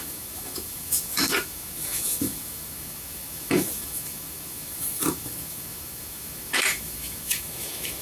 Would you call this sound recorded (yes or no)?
no